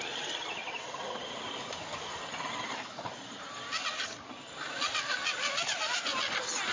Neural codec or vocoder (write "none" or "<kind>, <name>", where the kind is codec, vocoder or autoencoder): none